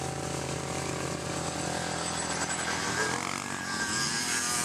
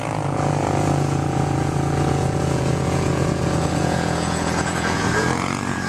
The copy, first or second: second